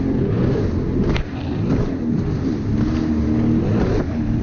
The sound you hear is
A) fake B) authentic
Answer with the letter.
B